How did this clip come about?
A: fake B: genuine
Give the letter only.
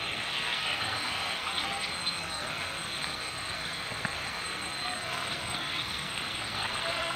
A